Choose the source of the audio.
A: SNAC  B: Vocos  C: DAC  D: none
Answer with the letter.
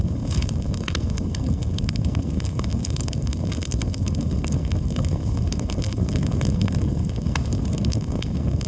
A